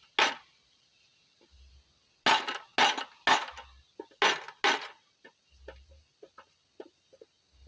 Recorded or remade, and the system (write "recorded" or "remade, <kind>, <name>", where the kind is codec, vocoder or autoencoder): recorded